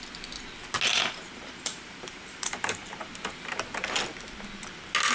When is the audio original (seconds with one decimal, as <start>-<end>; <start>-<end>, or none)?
0.0-0.9; 3.1-5.1

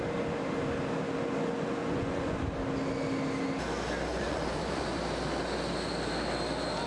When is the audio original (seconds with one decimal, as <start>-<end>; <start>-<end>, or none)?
0.0-1.8; 2.4-4.1; 5.0-6.9

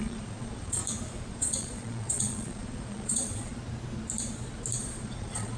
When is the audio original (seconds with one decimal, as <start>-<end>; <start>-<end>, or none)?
0.8-1.3; 3.5-4.8

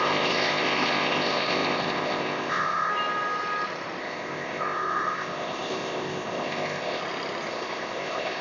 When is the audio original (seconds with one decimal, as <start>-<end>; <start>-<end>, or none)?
2.9-4.0; 7.0-7.5

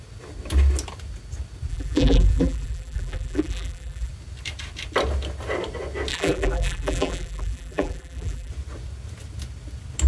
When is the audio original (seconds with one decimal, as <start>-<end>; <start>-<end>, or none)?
0.0-1.7; 4.1-6.1; 8.5-10.1